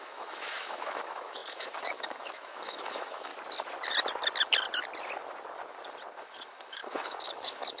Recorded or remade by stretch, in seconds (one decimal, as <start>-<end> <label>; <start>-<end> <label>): 0.0-3.3 remade; 3.3-6.3 recorded; 6.3-7.8 remade